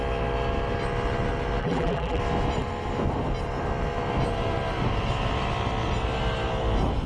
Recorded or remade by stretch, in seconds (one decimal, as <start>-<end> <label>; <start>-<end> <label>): 0.0-1.6 recorded; 1.6-2.2 remade; 2.2-7.1 recorded

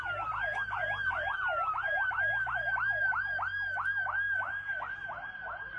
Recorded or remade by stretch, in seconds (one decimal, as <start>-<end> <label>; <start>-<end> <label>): 0.0-5.8 recorded

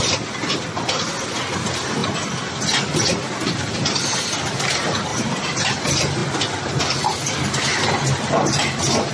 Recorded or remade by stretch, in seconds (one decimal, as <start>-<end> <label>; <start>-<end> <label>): 0.0-5.1 recorded; 5.1-5.6 remade; 5.6-9.1 recorded

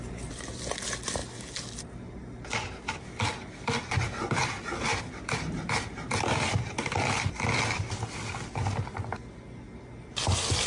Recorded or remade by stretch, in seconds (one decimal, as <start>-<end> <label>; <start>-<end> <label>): 0.0-4.9 recorded; 4.9-5.6 remade; 5.6-10.7 recorded

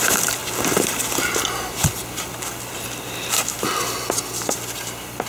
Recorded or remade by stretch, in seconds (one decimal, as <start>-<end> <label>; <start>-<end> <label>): 0.0-5.3 recorded

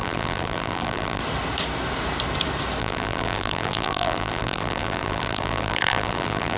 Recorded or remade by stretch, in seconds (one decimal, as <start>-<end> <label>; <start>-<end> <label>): 0.0-1.2 remade; 1.2-2.8 recorded; 2.8-6.6 remade